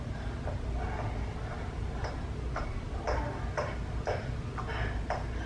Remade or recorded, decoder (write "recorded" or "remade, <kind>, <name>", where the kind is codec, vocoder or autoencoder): recorded